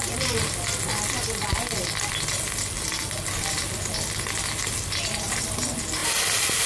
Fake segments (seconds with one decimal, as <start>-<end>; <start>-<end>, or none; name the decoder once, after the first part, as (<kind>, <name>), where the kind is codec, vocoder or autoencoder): 6.0-6.7 (vocoder, BigVGAN v2)